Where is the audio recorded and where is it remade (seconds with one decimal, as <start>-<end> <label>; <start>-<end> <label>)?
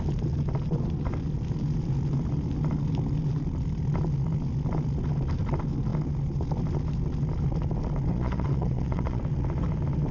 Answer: 0.0-8.1 recorded; 8.1-9.2 remade; 9.2-10.1 recorded